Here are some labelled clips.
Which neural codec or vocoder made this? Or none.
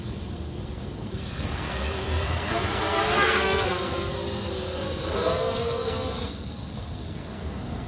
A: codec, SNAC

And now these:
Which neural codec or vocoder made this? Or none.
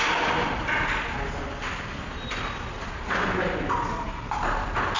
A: none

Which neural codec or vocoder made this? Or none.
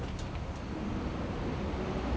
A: none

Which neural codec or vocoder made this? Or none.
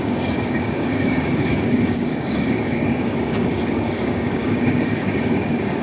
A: codec, DAC